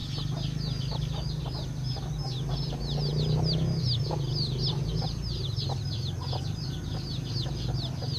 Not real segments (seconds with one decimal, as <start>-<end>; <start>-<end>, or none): none